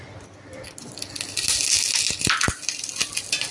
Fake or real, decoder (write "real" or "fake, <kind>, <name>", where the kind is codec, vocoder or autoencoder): real